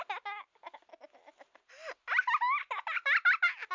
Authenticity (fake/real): real